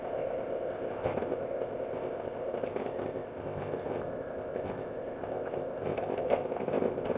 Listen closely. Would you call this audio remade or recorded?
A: remade